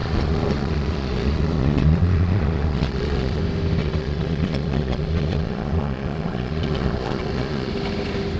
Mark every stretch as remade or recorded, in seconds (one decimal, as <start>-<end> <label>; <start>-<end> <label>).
0.0-3.4 remade; 3.4-3.8 recorded; 3.8-7.7 remade; 7.7-8.4 recorded